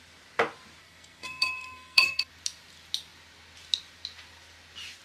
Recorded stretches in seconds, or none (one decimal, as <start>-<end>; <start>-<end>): 0.0-0.8; 2.3-5.0